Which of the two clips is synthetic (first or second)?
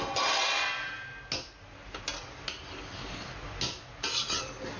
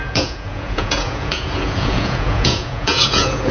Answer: second